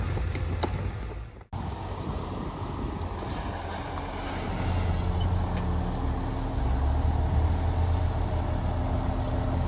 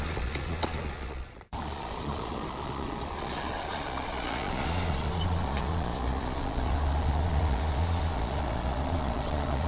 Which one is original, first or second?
first